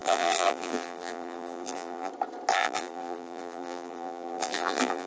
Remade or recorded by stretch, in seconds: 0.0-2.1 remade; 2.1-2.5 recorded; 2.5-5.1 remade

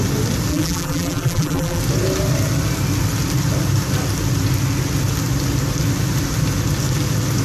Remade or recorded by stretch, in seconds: 0.0-0.5 recorded; 0.5-1.8 remade; 1.8-7.4 recorded

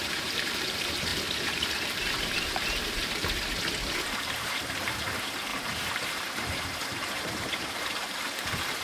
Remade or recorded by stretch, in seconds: 0.0-3.2 remade; 3.2-4.2 recorded; 4.2-8.8 remade

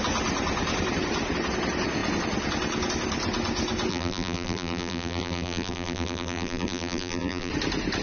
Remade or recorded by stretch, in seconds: 0.0-3.9 recorded; 3.9-7.5 remade; 7.5-8.0 recorded

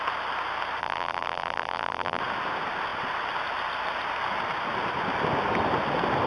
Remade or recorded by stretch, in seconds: 0.0-0.8 recorded; 0.8-2.2 remade; 2.2-6.3 recorded

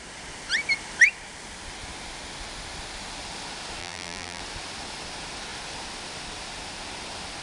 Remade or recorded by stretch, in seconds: 0.0-3.8 recorded; 3.8-4.4 remade; 4.4-7.4 recorded